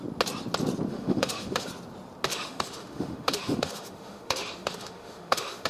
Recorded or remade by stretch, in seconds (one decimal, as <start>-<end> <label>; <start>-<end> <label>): 0.0-0.9 recorded; 0.9-1.7 remade; 1.7-2.3 recorded; 2.3-5.7 remade